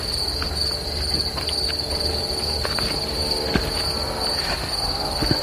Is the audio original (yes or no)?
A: yes